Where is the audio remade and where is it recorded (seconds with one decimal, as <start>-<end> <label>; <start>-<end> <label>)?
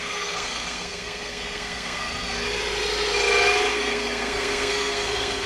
0.0-2.1 remade; 2.1-3.7 recorded; 3.7-5.5 remade